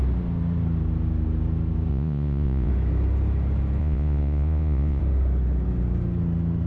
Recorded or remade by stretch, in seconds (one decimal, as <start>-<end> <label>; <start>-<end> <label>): 0.0-1.9 recorded; 1.9-2.7 remade; 2.7-3.8 recorded; 3.8-5.0 remade; 5.0-6.7 recorded

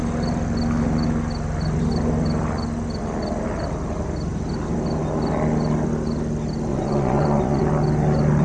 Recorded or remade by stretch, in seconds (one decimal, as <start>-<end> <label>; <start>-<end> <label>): 0.0-6.7 recorded; 6.7-7.6 remade; 7.6-8.4 recorded

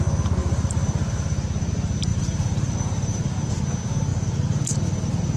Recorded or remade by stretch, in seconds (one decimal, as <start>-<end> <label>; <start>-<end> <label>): 0.0-0.4 recorded; 0.4-1.7 remade; 1.7-2.1 recorded; 2.1-3.5 remade; 3.5-5.4 recorded

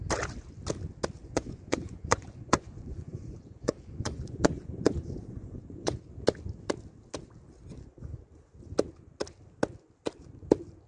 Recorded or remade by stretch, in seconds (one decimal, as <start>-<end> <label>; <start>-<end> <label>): 0.0-1.2 recorded; 1.2-6.0 remade; 6.0-10.9 recorded

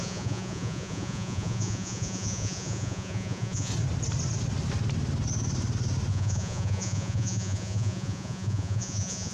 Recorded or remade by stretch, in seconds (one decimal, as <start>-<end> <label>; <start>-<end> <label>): 0.0-3.7 remade; 3.7-6.1 recorded; 6.1-9.3 remade